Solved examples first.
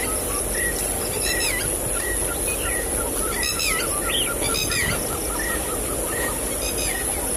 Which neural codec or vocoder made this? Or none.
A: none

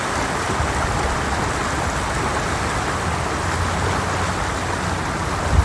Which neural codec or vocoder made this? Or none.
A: none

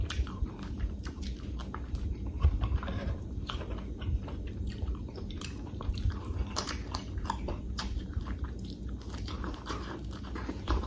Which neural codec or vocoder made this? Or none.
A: vocoder, BigVGAN v2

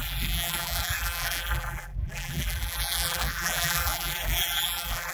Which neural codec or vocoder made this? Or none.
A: vocoder, BigVGAN v2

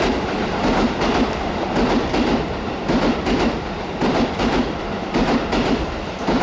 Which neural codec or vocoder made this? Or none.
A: vocoder, BigVGAN v2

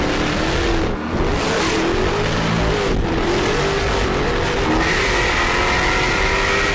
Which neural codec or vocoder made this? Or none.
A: none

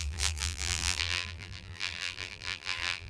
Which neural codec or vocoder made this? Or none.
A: vocoder, BigVGAN v2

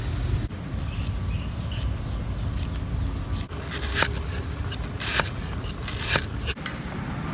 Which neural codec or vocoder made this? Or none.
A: none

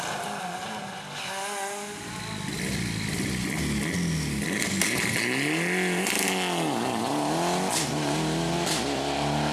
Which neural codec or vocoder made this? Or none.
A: none